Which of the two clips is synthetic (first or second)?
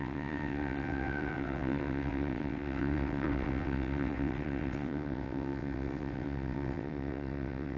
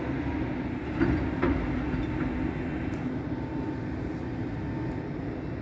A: first